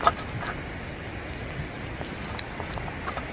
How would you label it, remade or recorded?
remade